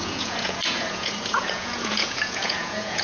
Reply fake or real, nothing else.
fake